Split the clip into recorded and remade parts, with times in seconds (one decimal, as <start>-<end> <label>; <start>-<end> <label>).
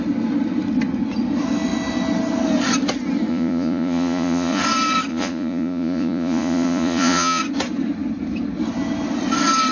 0.0-3.3 recorded; 3.3-4.6 remade; 4.6-5.1 recorded; 5.1-7.4 remade; 7.4-9.7 recorded